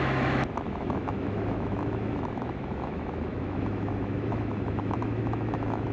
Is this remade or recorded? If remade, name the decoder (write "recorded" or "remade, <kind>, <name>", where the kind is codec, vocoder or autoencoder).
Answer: remade, autoencoder, DAC-VAE